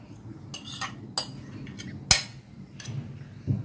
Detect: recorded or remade recorded